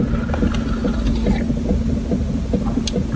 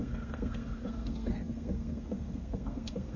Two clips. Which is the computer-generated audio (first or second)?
second